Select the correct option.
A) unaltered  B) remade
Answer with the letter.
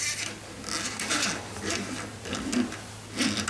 A